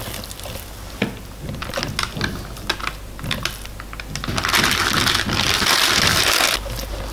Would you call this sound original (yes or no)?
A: yes